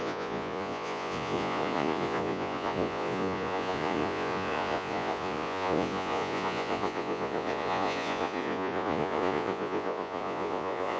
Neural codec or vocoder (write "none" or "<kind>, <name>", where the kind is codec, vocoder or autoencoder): vocoder, Vocos